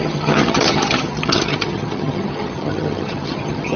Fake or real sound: fake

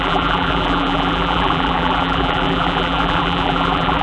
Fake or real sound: fake